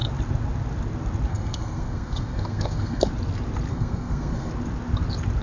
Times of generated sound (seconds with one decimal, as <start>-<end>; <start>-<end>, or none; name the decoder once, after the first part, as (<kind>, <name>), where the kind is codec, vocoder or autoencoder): 1.3-3.1 (codec, SNAC); 3.7-4.5